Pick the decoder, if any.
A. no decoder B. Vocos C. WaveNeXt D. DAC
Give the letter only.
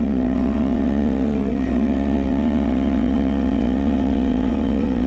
C